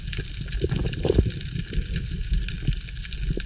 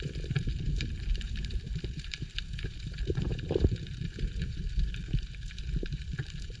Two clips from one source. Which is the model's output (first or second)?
second